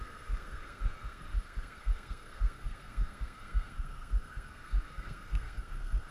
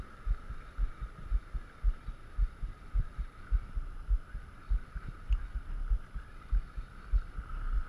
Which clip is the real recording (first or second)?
second